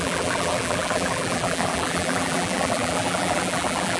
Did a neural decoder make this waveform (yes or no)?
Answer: yes